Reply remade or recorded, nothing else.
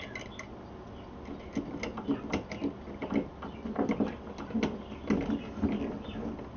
recorded